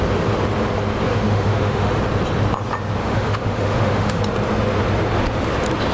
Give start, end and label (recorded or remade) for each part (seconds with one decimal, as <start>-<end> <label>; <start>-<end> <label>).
0.0-1.1 recorded; 1.1-2.0 remade; 2.0-3.0 recorded; 3.0-4.2 remade; 4.2-5.9 recorded